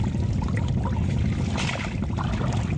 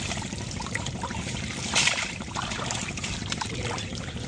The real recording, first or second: first